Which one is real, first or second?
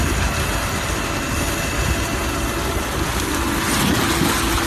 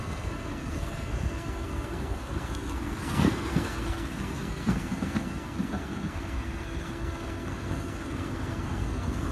first